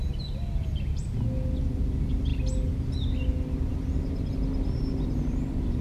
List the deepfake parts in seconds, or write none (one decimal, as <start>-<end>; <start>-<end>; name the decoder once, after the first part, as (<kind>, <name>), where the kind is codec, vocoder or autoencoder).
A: none